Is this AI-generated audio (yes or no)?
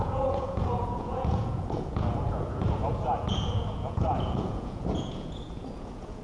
yes